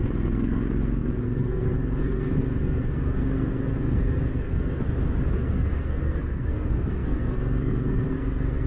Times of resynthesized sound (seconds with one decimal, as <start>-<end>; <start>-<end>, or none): 0.0-4.8; 5.3-8.7